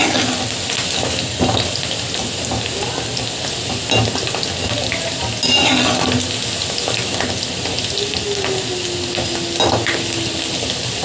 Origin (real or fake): real